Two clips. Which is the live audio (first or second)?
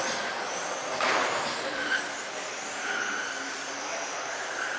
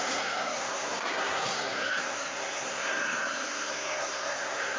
first